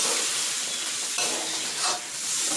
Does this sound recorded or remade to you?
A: recorded